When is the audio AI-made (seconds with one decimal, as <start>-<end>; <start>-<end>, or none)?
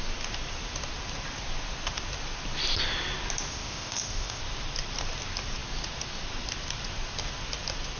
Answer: 3.5-4.4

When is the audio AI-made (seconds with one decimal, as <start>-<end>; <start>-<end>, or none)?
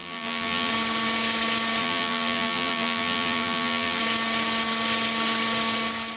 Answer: 0.0-0.7; 1.8-4.0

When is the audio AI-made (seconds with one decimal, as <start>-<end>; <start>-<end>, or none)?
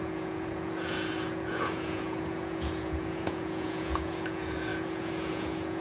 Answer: 0.0-5.8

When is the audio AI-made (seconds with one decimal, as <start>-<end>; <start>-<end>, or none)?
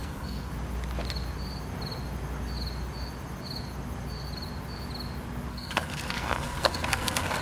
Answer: 0.0-0.5; 5.5-7.4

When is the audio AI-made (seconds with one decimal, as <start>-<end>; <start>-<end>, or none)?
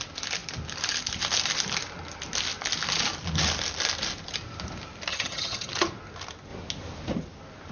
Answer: 5.1-5.7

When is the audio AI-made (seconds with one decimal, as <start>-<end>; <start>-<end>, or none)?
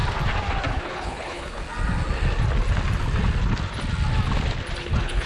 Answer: 0.7-1.6; 4.8-5.3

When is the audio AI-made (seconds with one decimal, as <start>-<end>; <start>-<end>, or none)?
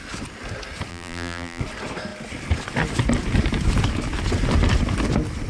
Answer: 0.9-1.6